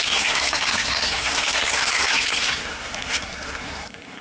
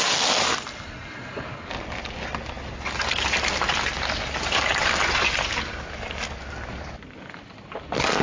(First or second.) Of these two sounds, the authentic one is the second